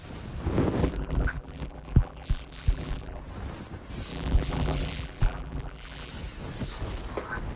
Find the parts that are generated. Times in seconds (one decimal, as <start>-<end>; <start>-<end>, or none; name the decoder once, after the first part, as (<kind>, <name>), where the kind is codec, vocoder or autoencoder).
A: 0.8-3.2 (vocoder, BigVGAN v2); 4.1-6.1